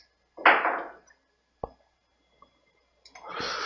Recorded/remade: recorded